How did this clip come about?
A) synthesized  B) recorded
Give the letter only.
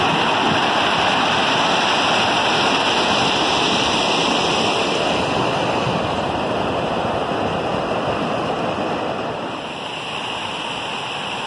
B